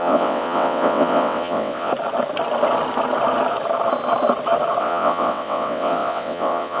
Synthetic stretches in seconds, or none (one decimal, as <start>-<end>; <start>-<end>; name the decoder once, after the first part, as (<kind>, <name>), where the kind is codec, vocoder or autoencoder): 0.0-1.9 (vocoder, WaveNeXt); 4.8-6.8